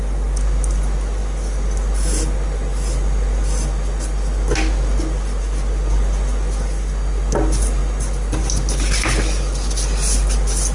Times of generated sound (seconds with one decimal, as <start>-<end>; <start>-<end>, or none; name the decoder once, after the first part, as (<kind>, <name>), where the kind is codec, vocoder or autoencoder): none